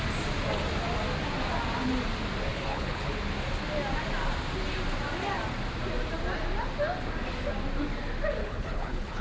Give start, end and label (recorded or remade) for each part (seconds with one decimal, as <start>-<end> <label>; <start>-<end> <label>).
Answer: 0.0-2.5 recorded; 2.5-3.1 remade; 3.1-8.4 recorded; 8.4-9.2 remade